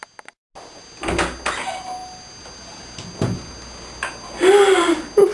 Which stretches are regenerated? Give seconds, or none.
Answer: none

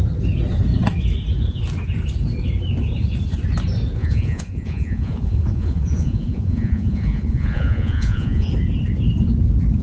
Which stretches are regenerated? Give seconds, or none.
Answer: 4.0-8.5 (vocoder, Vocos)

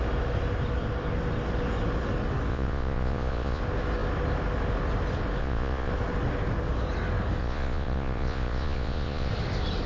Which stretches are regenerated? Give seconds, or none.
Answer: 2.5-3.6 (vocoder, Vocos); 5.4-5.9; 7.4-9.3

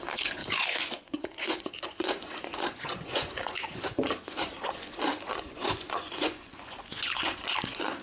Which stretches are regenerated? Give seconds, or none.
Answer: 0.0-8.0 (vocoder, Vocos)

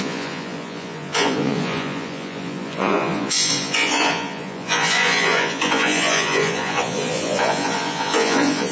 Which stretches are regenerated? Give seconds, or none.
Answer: 0.0-8.7 (vocoder, Vocos)

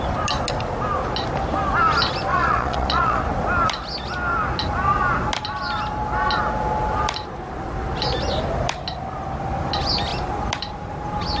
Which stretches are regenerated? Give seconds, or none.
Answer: 2.3-3.2 (vocoder, Vocos)

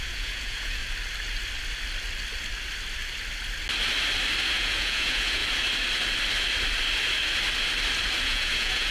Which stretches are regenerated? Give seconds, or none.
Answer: 0.0-0.8 (vocoder, Vocos); 4.4-5.4; 8.2-8.9

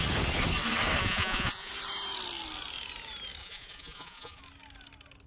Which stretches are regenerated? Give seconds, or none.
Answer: 1.0-1.7 (vocoder, Vocos); 3.4-4.4